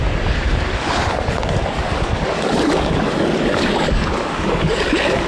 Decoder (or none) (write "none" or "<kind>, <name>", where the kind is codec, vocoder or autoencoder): codec, DAC